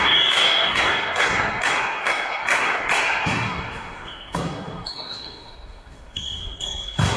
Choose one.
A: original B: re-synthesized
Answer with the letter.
B